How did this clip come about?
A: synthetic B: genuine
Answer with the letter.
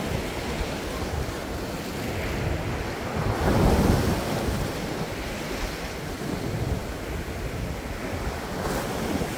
B